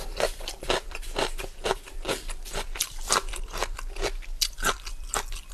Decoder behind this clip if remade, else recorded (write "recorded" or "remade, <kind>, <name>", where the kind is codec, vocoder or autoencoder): remade, vocoder, BigVGAN v2